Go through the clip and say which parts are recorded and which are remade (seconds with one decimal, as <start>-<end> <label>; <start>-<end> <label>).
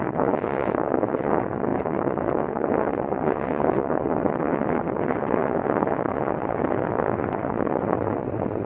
0.0-8.6 remade